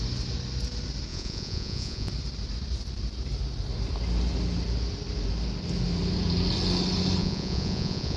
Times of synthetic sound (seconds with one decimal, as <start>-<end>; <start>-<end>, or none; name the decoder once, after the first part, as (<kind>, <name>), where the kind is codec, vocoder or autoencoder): 1.1-2.1 (vocoder, Vocos); 7.2-8.2